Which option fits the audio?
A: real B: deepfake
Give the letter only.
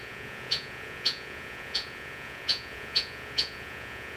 B